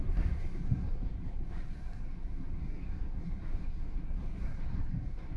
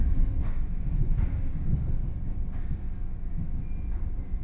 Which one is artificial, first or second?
first